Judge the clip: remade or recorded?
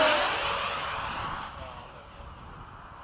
recorded